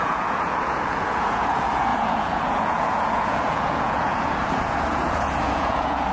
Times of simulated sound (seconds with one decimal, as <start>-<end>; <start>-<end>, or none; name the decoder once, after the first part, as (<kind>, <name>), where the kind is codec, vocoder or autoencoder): 0.0-6.1 (vocoder, Vocos)